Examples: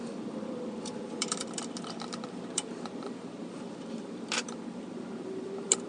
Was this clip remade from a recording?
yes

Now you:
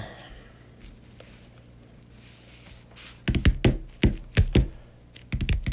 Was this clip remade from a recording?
no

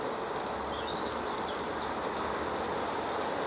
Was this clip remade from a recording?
no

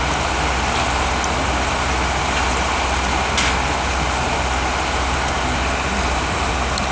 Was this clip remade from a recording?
no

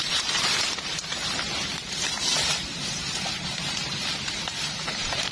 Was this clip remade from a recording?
yes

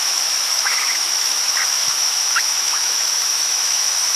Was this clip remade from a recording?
yes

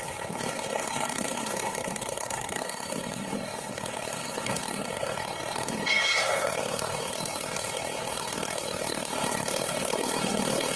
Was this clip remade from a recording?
yes